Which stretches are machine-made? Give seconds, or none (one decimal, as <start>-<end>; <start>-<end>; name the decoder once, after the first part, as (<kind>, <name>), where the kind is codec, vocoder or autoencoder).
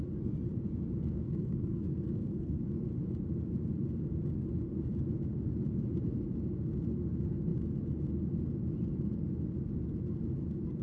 1.0-2.6 (codec, SNAC)